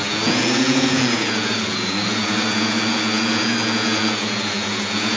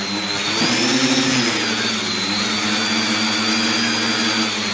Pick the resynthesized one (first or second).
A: first